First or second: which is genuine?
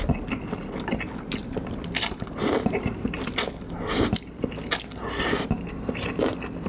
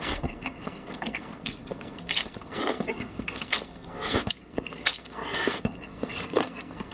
first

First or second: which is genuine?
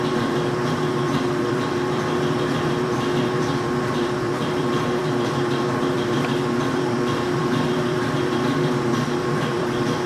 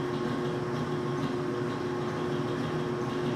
second